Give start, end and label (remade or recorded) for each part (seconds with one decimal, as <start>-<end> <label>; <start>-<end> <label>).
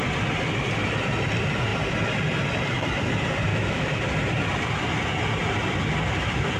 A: 0.0-3.5 recorded; 3.5-4.0 remade; 4.0-6.6 recorded